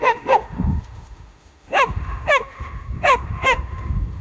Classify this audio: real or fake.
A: fake